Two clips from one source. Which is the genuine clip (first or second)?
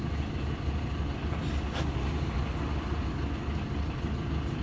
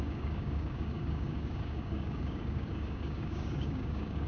first